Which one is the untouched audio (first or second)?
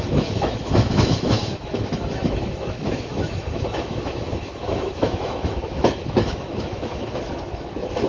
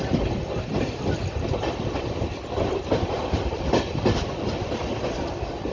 second